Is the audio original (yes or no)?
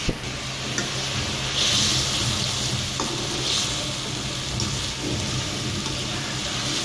yes